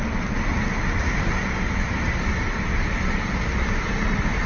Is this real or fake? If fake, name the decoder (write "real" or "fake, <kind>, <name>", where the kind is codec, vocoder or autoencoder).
real